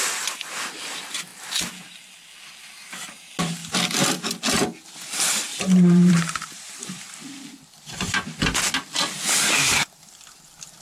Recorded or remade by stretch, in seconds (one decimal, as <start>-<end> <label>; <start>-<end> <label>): 0.0-5.5 recorded; 5.5-7.0 remade; 7.0-9.6 recorded; 9.6-10.3 remade; 10.3-10.8 recorded